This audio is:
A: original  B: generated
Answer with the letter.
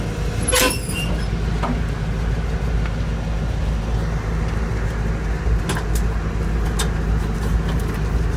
A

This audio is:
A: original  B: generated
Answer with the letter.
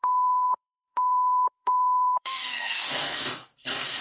B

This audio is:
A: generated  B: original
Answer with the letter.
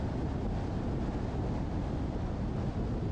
B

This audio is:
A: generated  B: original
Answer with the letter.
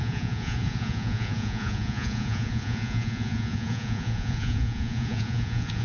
A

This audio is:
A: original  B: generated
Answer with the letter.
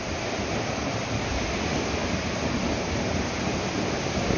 A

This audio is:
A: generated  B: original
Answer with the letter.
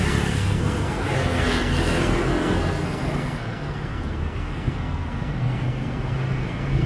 A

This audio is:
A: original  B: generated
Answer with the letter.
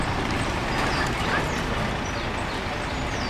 A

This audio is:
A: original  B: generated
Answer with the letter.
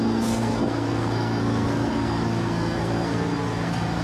B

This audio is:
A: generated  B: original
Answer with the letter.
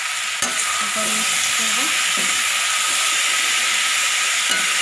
B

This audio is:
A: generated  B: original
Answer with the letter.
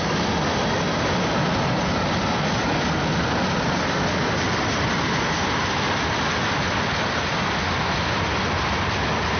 B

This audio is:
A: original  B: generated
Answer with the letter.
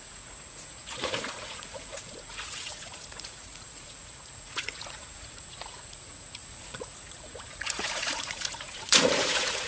B